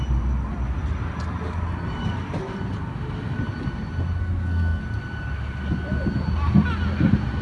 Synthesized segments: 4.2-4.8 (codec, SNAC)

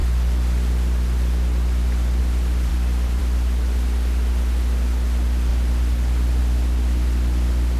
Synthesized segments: 0.0-2.2 (vocoder, BigVGAN v2); 2.7-3.2; 5.5-6.4

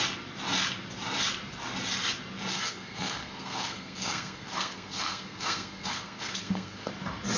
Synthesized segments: 2.5-6.9 (codec, SNAC)

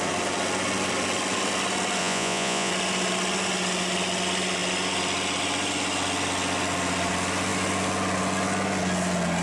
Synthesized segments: 2.0-2.7 (vocoder, Vocos)